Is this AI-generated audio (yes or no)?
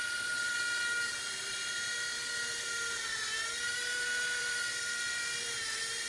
yes